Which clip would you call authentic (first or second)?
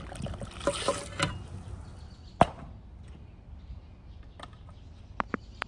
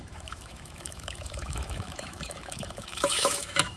first